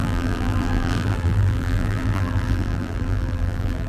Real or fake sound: fake